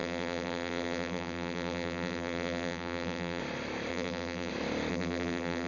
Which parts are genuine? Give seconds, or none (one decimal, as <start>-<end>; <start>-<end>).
3.4-3.9; 4.5-4.9